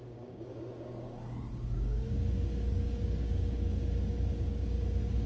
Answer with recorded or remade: remade